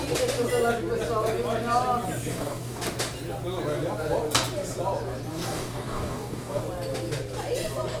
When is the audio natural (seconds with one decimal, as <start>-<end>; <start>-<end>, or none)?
0.0-2.3; 2.8-5.3; 6.6-8.0